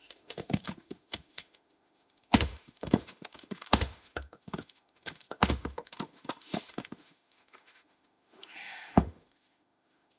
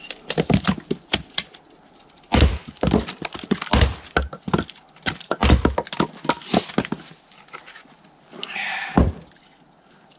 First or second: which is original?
second